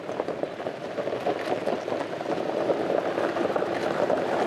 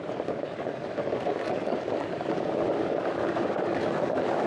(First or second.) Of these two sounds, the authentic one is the first